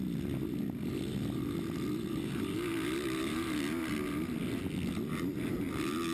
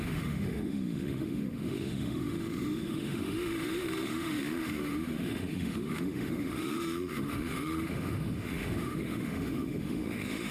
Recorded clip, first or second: first